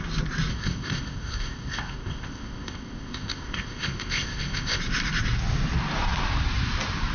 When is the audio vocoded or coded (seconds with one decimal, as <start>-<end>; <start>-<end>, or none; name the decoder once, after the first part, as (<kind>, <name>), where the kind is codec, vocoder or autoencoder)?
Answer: 0.5-4.8 (codec, ZipCodec)